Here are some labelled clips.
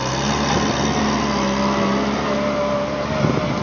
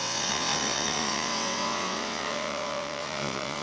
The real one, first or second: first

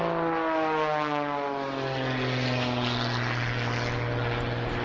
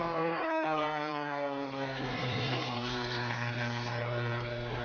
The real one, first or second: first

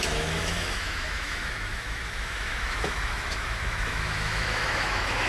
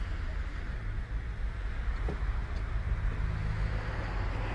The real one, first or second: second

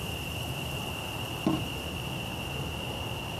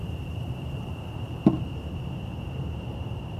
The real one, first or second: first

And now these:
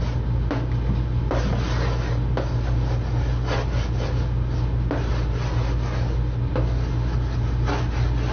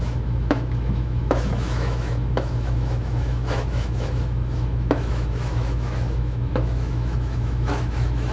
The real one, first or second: first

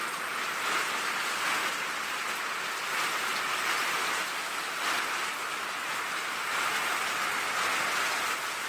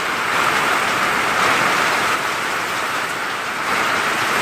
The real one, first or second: first